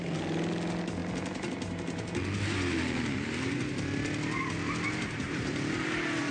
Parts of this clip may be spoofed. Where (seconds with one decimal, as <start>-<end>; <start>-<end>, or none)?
none